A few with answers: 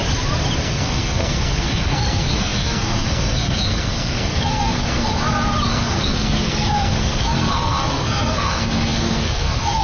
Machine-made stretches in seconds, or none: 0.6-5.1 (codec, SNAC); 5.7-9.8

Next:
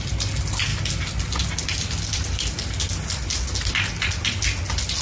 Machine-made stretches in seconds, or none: none

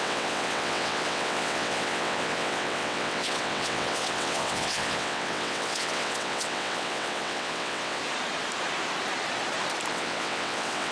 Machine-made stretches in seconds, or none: 0.0-8.0 (vocoder, WaveNeXt); 9.9-10.9

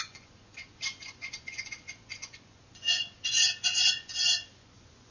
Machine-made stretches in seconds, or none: 0.0-5.1 (vocoder, Vocos)